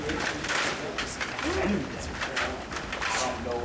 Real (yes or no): yes